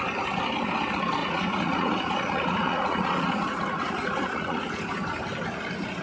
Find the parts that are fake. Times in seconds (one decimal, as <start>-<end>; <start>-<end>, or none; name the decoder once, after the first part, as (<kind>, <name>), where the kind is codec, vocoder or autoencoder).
1.2-4.8 (vocoder, Vocos)

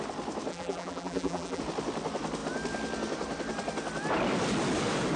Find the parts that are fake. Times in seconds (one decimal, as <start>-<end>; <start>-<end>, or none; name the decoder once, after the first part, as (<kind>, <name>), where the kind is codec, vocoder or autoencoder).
0.5-1.6 (vocoder, BigVGAN v2)